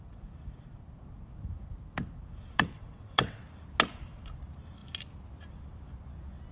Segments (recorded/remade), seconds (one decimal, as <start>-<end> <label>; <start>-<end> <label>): 0.0-2.5 recorded; 2.5-3.4 remade; 3.4-6.5 recorded